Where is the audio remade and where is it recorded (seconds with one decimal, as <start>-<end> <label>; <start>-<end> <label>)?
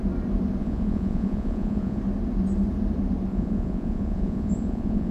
0.0-0.6 recorded; 0.6-2.0 remade; 2.0-3.3 recorded; 3.3-5.1 remade